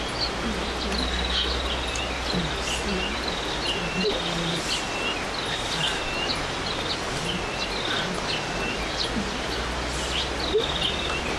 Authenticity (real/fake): real